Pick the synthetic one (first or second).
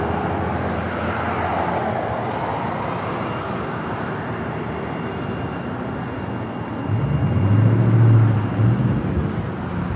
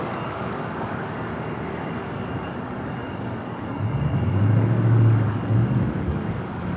second